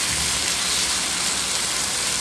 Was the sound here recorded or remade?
recorded